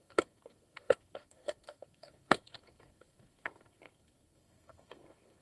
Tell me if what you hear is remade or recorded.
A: remade